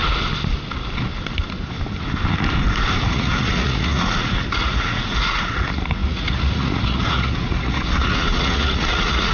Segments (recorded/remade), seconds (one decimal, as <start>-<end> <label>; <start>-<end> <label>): 0.0-3.0 recorded; 3.0-9.3 remade